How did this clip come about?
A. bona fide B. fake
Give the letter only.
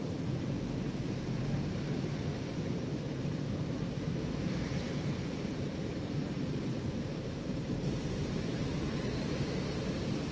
B